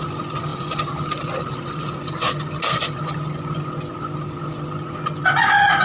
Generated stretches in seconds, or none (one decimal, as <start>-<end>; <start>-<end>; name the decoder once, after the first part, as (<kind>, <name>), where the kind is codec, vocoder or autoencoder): none

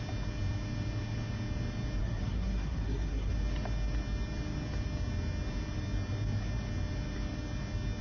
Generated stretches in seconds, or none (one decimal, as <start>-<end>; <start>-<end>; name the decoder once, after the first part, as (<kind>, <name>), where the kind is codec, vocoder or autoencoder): 2.0-3.3 (codec, SNAC)

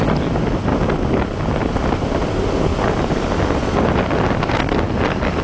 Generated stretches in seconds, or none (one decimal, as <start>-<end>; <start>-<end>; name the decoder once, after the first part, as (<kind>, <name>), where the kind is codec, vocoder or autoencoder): none

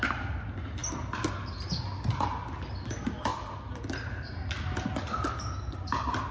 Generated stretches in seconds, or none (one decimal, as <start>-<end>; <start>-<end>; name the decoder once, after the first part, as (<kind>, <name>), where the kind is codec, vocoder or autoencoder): none